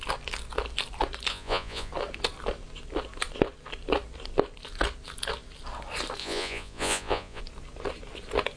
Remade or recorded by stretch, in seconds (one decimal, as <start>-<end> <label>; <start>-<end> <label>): 0.0-1.3 recorded; 1.3-1.9 remade; 1.9-6.2 recorded; 6.2-7.4 remade; 7.4-8.6 recorded

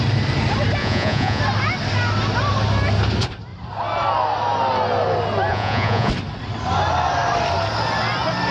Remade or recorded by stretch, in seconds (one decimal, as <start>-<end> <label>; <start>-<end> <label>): 0.0-0.8 recorded; 0.8-1.4 remade; 1.4-5.5 recorded; 5.5-6.1 remade; 6.1-8.5 recorded

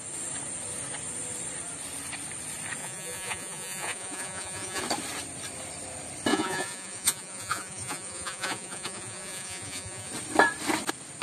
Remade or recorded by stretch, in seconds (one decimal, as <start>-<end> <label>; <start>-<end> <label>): 0.0-2.8 recorded; 2.8-4.8 remade; 4.8-6.3 recorded; 6.3-10.1 remade; 10.1-11.2 recorded

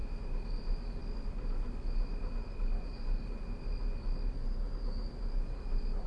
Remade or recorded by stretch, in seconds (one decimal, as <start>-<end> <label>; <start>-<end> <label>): 0.0-6.1 recorded

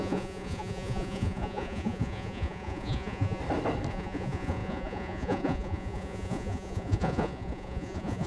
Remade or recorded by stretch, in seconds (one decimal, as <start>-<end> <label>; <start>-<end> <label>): 0.0-3.4 remade; 3.4-3.9 recorded; 3.9-8.3 remade

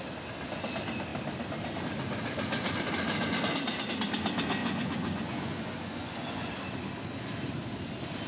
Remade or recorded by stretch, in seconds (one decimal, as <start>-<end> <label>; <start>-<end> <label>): 0.0-4.6 recorded; 4.6-6.5 remade; 6.5-8.3 recorded

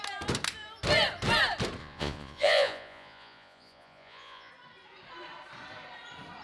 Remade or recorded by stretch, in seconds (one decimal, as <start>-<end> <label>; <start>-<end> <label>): 0.0-1.8 recorded; 1.8-4.5 remade; 4.5-6.4 recorded

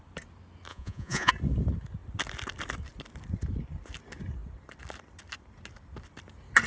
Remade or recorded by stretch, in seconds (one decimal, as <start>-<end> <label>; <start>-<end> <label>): 0.0-0.7 recorded; 0.7-1.3 remade; 1.3-6.7 recorded